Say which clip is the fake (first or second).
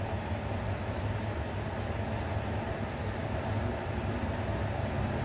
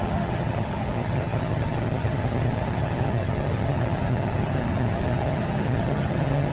second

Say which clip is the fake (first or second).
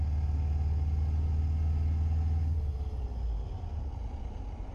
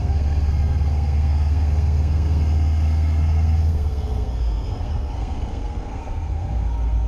second